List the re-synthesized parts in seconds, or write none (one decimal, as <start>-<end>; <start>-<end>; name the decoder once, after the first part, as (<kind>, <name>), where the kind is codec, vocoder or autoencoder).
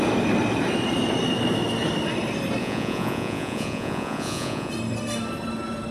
2.6-4.7 (vocoder, Vocos)